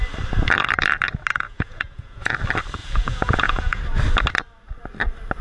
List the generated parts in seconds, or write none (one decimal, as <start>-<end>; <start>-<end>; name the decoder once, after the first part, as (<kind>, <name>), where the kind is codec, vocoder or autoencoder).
1.3-2.3 (vocoder, Vocos); 2.8-3.8